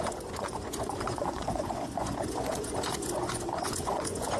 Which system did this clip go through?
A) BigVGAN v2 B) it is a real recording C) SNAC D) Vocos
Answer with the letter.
D